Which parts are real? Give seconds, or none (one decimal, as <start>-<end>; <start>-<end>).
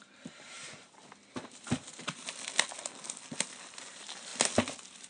1.0-3.7; 4.3-5.1